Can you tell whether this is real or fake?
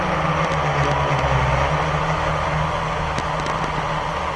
real